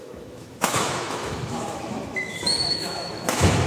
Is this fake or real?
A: fake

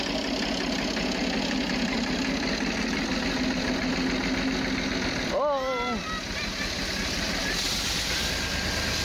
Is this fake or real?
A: real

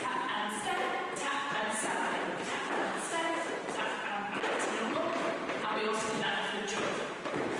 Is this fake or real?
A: fake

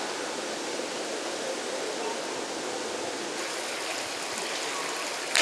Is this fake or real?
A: real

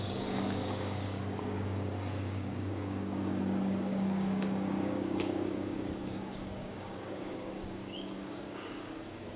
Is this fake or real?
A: fake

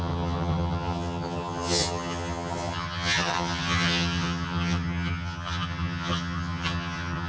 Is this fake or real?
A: fake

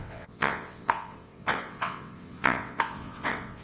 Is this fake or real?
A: fake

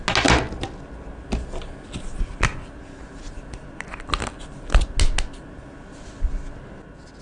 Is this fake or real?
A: real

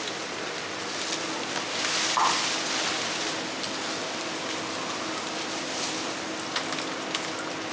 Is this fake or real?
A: real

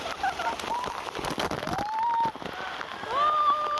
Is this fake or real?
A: real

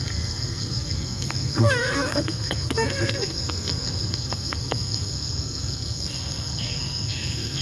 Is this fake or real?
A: fake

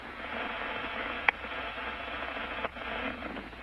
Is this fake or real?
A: fake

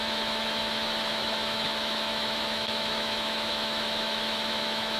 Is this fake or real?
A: fake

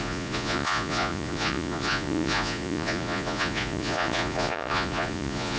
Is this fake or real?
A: fake